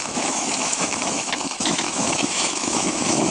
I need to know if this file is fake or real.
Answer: fake